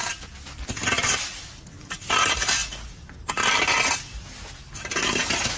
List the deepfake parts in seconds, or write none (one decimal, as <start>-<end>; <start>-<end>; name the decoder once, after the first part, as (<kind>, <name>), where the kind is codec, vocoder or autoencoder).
none